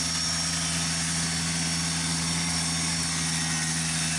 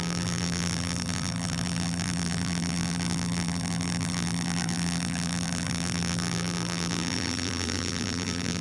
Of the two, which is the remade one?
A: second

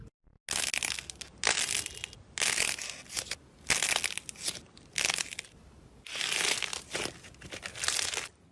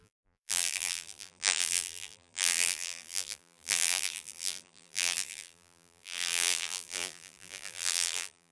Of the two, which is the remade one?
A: second